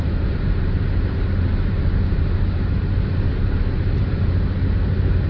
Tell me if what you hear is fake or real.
fake